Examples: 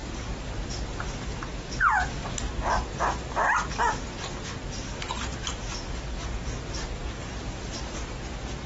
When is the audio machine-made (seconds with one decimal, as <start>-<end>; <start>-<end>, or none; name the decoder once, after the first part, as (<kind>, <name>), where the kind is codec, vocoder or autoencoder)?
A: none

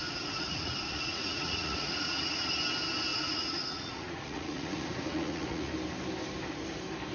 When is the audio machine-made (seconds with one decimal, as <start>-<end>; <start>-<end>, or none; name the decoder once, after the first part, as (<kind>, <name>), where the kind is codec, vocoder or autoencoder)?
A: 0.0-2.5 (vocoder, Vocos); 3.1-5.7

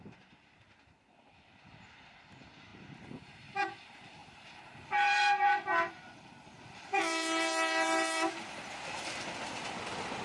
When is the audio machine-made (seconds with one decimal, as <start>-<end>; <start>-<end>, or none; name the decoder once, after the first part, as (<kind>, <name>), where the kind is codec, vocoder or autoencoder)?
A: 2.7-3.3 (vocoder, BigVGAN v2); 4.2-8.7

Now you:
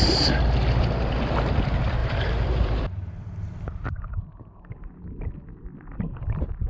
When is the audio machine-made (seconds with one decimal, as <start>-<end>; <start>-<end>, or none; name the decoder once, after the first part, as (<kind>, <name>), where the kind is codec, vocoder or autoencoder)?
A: 2.0-3.7 (vocoder, BigVGAN v2)

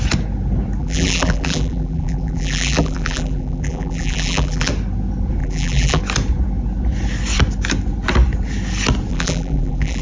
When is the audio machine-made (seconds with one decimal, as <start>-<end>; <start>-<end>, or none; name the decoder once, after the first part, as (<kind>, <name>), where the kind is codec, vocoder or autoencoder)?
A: 0.8-4.7 (vocoder, BigVGAN v2); 5.4-6.0; 9.1-10.0